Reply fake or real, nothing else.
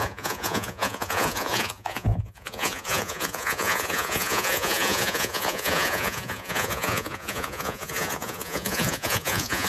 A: fake